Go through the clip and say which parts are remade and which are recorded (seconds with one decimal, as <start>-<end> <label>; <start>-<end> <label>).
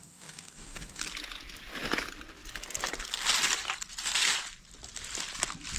0.0-1.0 remade; 1.0-5.8 recorded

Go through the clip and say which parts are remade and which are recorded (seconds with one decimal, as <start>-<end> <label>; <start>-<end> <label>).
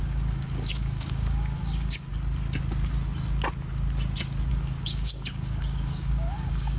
0.0-2.1 remade; 2.1-4.5 recorded; 4.5-6.8 remade